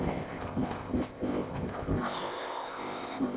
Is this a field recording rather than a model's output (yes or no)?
no